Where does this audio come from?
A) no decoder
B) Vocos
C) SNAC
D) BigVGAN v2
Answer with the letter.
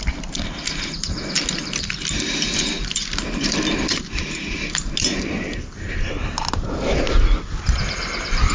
A